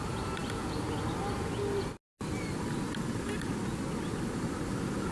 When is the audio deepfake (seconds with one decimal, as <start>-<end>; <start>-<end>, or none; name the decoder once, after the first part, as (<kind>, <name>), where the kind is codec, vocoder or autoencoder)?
none